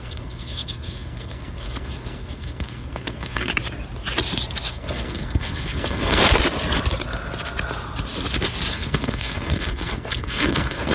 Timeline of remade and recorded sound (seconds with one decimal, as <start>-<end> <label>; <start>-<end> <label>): 0.0-3.5 remade; 3.5-4.7 recorded; 4.7-6.2 remade; 6.2-8.7 recorded; 8.7-10.9 remade